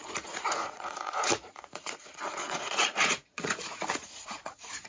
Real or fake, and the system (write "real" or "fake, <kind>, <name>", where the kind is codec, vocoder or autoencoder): fake, vocoder, Vocos